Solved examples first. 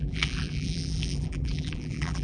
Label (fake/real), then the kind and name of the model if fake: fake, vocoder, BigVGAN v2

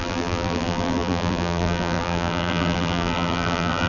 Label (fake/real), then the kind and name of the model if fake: fake, vocoder, BigVGAN v2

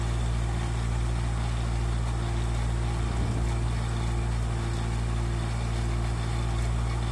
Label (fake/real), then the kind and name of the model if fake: real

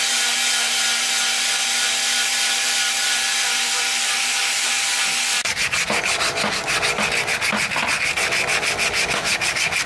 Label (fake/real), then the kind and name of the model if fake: real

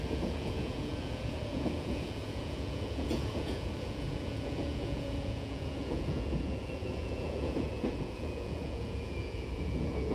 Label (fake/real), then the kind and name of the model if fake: fake, vocoder, Vocos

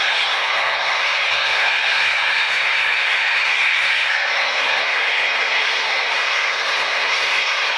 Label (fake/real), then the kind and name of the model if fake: fake, codec, SNAC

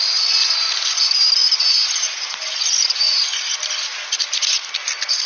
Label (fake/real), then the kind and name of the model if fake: real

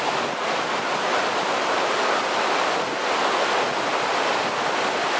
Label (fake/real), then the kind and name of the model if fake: real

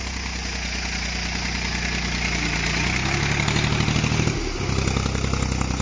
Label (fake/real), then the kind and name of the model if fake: real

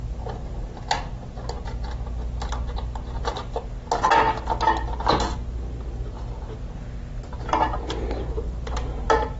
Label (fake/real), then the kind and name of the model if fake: real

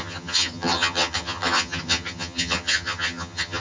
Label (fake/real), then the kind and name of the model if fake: fake, vocoder, HiFi-GAN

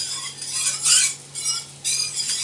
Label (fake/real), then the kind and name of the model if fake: real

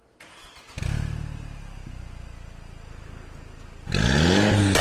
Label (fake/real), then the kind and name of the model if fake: real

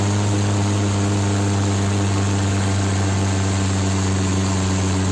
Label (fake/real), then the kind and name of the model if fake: real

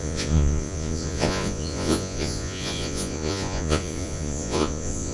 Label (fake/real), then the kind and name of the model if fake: fake, vocoder, Vocos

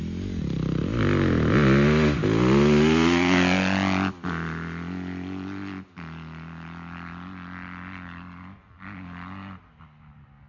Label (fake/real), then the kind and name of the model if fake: real